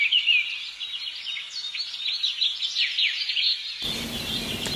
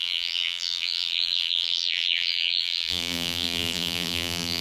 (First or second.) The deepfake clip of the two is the second